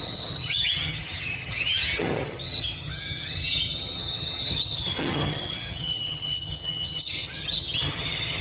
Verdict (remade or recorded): remade